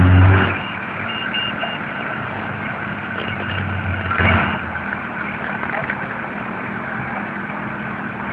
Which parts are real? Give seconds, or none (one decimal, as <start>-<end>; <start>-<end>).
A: 0.0-8.3